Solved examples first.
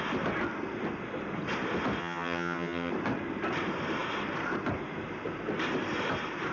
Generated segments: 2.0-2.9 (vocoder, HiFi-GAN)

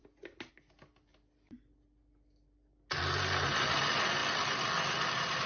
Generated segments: none

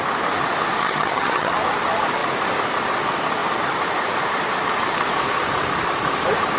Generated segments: 0.8-1.5 (vocoder, HiFi-GAN)

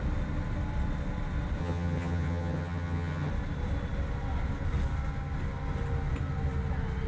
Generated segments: 1.6-3.3 (vocoder, HiFi-GAN)

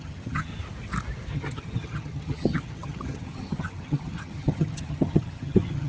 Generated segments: 0.0-0.5 (vocoder, HiFi-GAN); 1.3-5.9

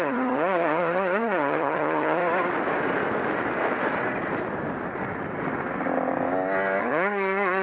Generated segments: 0.0-2.2 (vocoder, HiFi-GAN); 6.8-7.6

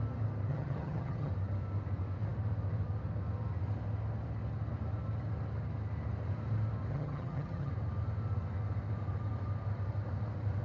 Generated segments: 0.5-1.3 (vocoder, HiFi-GAN); 6.9-7.7

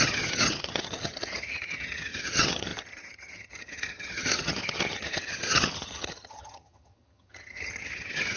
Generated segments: 0.0-8.4 (vocoder, HiFi-GAN)